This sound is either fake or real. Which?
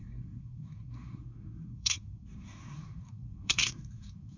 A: fake